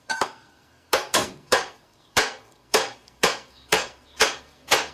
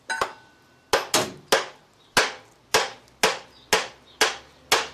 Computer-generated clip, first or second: first